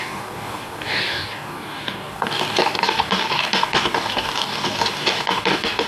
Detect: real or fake fake